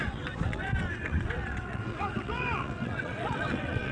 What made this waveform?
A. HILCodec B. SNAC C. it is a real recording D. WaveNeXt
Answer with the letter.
D